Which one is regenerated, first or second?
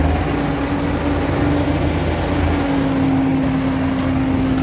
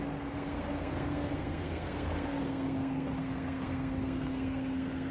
second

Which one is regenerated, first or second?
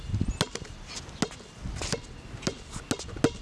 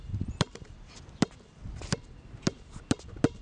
second